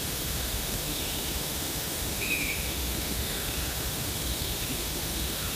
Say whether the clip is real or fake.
fake